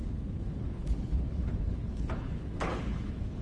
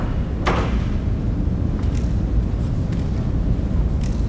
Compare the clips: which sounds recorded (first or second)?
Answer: second